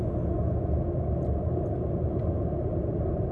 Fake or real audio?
real